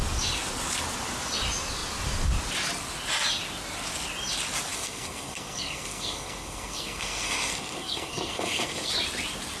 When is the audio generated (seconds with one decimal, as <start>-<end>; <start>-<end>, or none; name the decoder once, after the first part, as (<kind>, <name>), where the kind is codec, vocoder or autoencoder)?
4.7-8.9 (codec, SNAC)